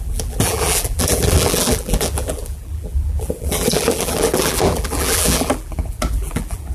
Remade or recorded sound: remade